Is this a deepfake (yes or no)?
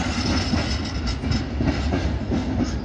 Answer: no